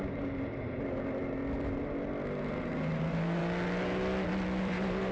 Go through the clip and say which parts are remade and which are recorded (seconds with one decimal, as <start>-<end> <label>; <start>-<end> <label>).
0.0-1.4 remade; 1.4-2.4 recorded; 2.4-3.4 remade; 3.4-4.6 recorded; 4.6-5.1 remade

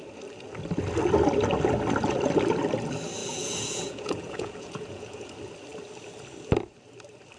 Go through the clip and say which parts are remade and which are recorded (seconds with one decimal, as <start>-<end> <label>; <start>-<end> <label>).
0.0-3.2 recorded; 3.2-5.3 remade; 5.3-7.4 recorded